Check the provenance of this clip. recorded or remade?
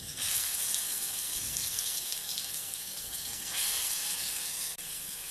remade